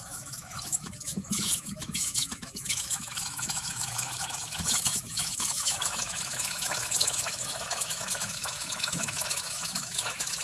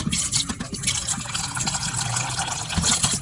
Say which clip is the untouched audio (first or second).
second